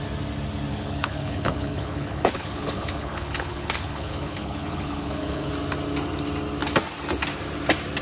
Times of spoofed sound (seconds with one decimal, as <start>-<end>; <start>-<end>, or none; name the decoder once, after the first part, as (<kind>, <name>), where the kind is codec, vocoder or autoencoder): 0.7-5.5 (codec, HILCodec)